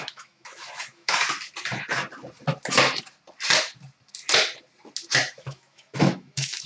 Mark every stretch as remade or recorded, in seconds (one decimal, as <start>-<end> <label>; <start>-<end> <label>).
0.0-1.2 remade; 1.2-5.2 recorded; 5.2-6.7 remade